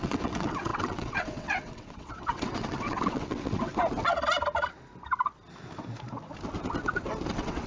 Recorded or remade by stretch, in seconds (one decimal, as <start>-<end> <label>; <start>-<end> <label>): 0.0-3.7 remade; 3.7-7.3 recorded; 7.3-7.7 remade